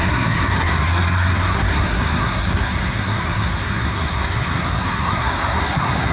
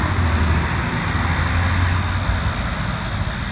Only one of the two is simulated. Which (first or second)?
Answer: first